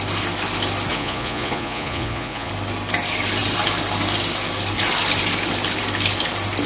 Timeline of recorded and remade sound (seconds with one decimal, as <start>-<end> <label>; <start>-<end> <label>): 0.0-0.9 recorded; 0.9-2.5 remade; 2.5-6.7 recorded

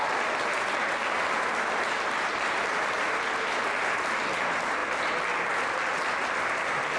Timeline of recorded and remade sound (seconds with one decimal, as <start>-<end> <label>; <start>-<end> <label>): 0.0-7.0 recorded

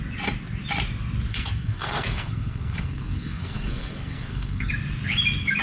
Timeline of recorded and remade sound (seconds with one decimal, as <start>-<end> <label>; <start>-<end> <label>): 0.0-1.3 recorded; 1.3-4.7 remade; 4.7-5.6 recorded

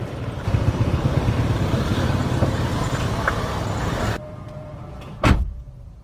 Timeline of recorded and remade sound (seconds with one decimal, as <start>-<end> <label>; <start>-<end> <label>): 0.0-6.0 remade